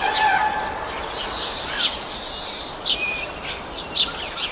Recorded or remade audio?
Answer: remade